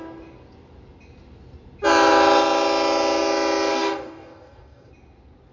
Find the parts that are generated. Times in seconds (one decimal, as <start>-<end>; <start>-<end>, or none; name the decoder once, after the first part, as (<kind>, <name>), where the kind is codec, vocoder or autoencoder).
3.7-4.9 (codec, DAC)